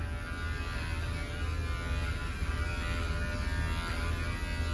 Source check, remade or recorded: recorded